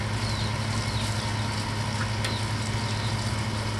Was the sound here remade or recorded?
recorded